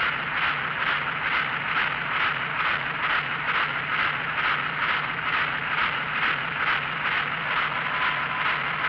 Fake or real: real